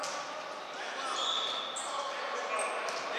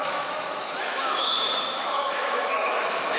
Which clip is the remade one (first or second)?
second